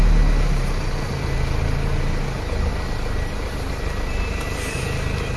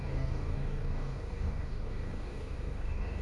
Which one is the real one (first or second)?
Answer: first